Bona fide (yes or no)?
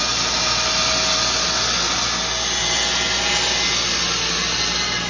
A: yes